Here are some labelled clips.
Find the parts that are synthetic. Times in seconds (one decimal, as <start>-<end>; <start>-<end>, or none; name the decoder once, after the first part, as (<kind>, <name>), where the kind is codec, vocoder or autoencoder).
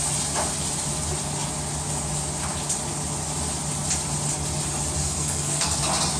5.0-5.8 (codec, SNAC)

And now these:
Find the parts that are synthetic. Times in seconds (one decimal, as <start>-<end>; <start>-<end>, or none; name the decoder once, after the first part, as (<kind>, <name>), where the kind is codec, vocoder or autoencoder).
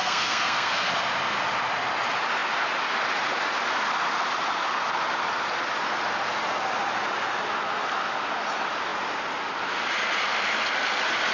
0.0-0.9 (codec, SNAC)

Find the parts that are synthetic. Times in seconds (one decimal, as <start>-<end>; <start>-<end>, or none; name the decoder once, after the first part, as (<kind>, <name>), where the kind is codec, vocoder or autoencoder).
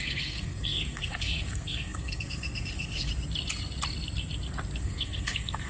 0.0-3.1 (codec, SNAC); 4.8-5.7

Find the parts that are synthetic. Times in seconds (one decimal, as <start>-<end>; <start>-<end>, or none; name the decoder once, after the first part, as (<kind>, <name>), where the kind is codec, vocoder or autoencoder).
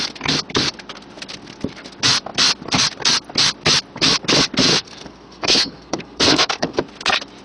4.7-6.8 (codec, SNAC)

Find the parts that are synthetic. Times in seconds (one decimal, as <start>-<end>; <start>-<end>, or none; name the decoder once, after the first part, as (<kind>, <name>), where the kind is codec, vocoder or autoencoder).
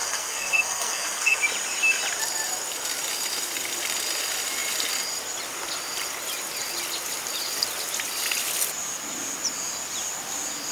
0.0-1.4 (codec, SNAC)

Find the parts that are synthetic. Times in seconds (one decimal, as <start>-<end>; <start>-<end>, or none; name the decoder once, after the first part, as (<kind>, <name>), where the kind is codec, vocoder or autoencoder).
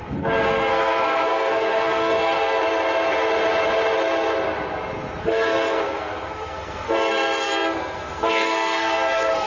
0.0-2.6 (codec, SNAC); 5.2-9.5